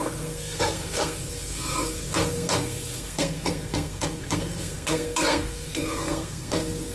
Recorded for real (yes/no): no